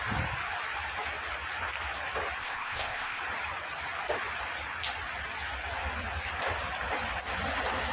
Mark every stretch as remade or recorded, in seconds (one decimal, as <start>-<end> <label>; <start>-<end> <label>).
0.0-2.4 recorded; 2.4-3.2 remade; 3.2-7.9 recorded